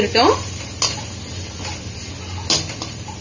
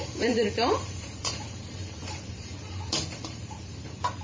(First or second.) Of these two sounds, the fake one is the second